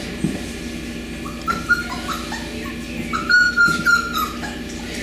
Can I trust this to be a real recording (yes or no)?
yes